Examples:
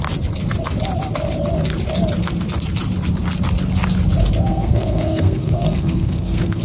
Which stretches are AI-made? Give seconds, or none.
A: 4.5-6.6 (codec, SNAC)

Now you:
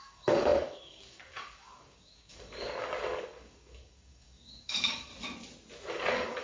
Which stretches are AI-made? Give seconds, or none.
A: 0.0-5.1 (codec, DAC); 5.9-6.4

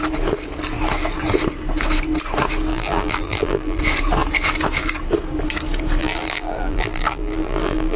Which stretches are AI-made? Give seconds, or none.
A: 2.7-3.8 (vocoder, BigVGAN v2); 6.0-8.0

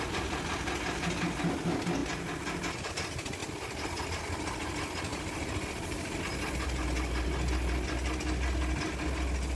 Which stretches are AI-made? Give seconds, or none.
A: 3.4-4.2 (vocoder, BigVGAN v2); 5.1-6.2

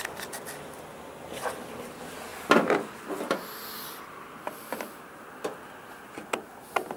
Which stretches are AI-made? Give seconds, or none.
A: none

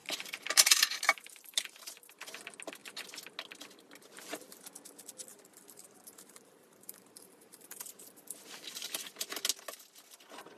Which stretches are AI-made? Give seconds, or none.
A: 0.0-1.9 (vocoder, BigVGAN v2); 5.3-8.0

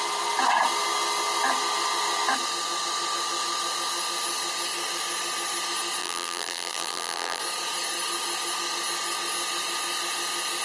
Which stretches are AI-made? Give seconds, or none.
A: 6.0-7.4 (vocoder, BigVGAN v2)